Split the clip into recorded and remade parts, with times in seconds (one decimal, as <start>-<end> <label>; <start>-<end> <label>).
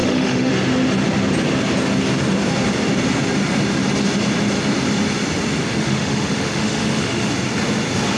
0.0-0.5 remade; 0.5-5.6 recorded; 5.6-7.3 remade; 7.3-8.2 recorded